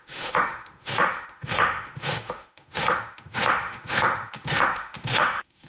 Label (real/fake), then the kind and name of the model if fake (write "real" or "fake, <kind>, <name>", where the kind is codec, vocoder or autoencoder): fake, autoencoder, DAC-VAE